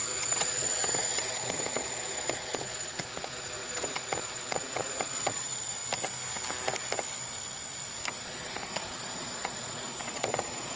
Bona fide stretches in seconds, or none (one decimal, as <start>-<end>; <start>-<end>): 5.8-8.2